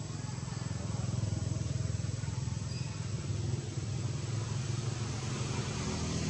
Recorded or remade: recorded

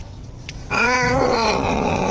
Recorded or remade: remade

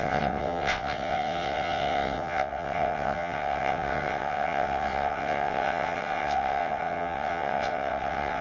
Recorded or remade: remade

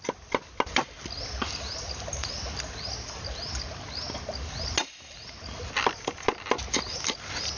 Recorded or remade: recorded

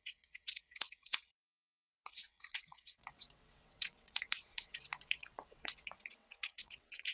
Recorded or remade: remade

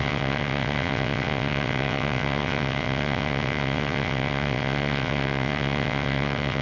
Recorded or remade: remade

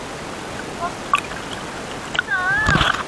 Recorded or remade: recorded